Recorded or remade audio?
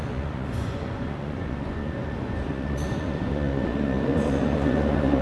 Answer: remade